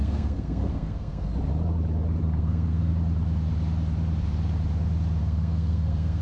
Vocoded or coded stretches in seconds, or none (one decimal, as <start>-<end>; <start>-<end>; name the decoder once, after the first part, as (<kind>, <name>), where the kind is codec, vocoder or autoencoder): 0.0-1.3 (codec, SNAC); 2.2-2.9; 5.2-6.2